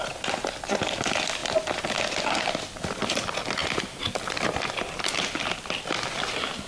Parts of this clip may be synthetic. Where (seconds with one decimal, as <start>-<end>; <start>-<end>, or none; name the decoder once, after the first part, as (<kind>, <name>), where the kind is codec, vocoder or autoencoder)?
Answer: none

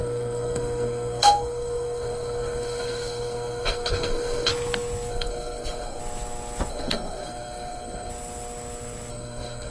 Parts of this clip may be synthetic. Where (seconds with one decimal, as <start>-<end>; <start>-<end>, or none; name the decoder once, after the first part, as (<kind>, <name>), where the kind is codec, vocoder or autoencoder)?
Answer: 0.0-4.5 (codec, SNAC); 5.1-6.0; 6.7-8.1; 9.1-9.7

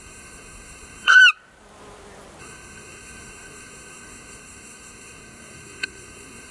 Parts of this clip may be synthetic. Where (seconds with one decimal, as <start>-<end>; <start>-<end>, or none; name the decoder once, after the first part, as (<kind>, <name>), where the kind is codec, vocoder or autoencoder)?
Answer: 0.0-1.2 (codec, SNAC); 2.4-6.5